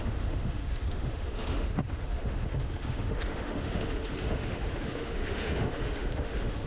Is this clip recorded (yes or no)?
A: no